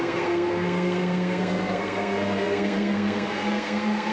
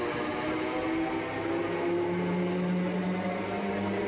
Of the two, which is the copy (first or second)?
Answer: first